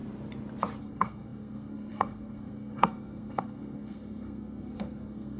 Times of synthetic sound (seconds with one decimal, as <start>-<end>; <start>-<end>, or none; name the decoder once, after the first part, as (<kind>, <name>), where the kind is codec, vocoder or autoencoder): 0.8-5.4 (codec, SNAC)